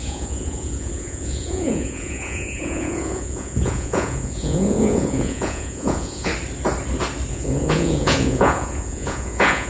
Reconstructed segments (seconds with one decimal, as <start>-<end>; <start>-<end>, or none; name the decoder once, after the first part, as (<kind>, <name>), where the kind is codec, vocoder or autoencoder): 0.0-6.3 (vocoder, Vocos); 7.3-9.7